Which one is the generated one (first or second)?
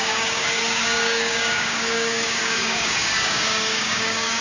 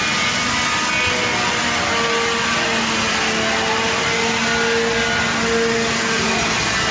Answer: first